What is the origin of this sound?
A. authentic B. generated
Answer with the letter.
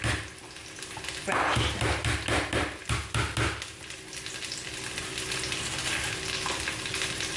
A